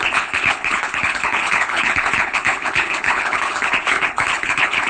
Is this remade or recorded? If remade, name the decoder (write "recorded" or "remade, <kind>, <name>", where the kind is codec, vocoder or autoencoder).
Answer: remade, codec, HILCodec